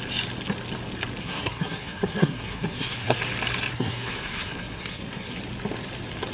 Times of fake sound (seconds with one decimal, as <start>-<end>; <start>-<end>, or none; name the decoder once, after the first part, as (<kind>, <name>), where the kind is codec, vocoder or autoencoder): 1.2-3.2 (codec, SNAC); 3.7-5.4